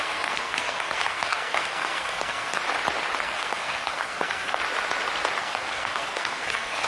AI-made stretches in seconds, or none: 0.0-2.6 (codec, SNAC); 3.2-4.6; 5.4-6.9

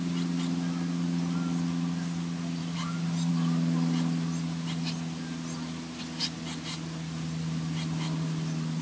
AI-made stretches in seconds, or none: none